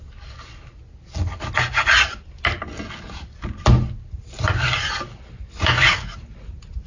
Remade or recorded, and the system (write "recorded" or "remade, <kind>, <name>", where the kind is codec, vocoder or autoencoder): recorded